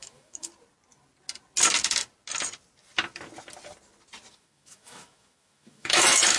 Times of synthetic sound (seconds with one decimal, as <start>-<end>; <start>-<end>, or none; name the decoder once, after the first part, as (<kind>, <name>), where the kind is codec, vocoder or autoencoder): 0.0-0.5 (autoencoder, DAC-VAE); 4.3-6.4